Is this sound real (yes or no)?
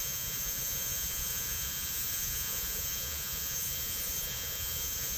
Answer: no